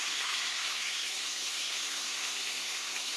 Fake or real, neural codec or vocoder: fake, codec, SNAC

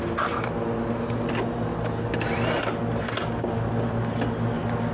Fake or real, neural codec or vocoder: real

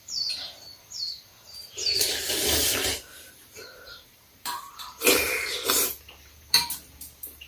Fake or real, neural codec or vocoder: fake, vocoder, BigVGAN v2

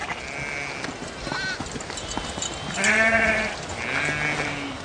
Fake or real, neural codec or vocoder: real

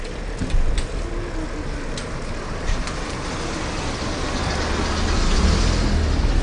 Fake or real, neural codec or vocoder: real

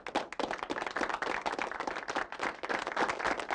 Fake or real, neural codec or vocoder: real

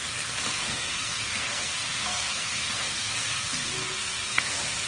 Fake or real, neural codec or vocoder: fake, codec, SNAC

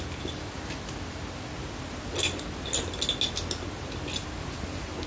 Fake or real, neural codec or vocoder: real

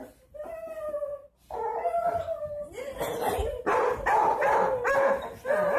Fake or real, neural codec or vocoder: real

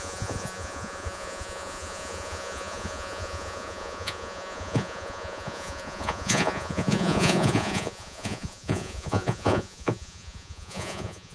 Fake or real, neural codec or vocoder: fake, vocoder, Vocos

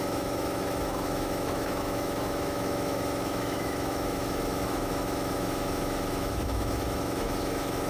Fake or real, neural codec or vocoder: fake, autoencoder, DAC-VAE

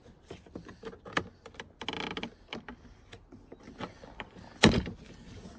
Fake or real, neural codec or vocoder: real